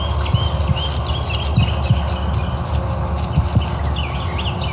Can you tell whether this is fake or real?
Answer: real